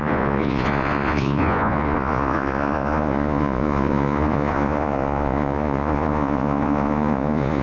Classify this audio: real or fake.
fake